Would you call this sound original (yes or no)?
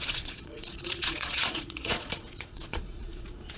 no